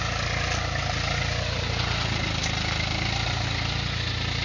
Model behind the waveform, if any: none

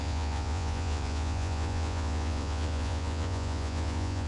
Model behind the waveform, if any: vocoder, Vocos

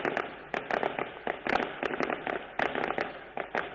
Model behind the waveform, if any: none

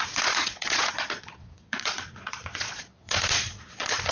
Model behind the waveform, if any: vocoder, Vocos